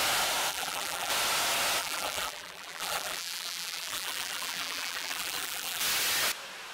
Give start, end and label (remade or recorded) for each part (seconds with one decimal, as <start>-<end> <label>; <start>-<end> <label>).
0.0-0.5 recorded; 0.5-1.1 remade; 1.1-1.8 recorded; 1.8-5.8 remade; 5.8-6.7 recorded